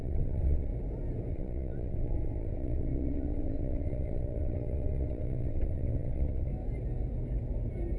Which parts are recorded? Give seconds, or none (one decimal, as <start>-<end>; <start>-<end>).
0.7-1.3; 6.5-8.0